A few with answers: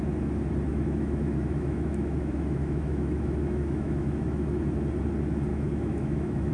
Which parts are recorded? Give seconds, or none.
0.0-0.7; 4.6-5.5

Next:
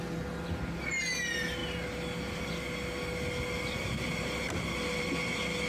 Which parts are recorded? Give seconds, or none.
0.0-5.7

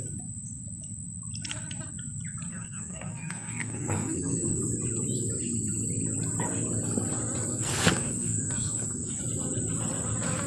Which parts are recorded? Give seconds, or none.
0.0-2.5; 4.6-7.5; 9.2-10.5

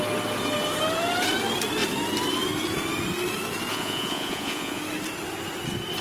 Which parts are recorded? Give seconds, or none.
0.0-3.7; 4.8-6.0

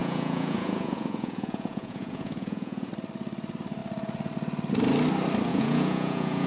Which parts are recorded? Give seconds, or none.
2.9-5.5

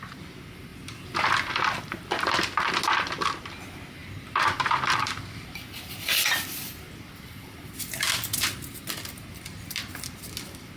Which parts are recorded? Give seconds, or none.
0.0-4.0; 8.0-10.8

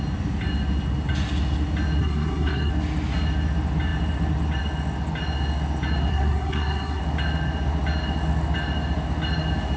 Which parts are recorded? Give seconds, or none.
0.0-2.0; 2.7-6.1; 7.0-9.8

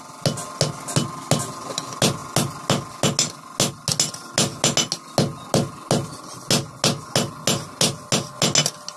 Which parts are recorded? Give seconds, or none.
0.0-9.0